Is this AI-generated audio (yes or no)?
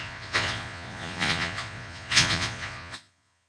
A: yes